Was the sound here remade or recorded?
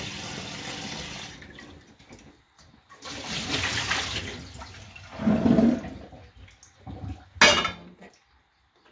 recorded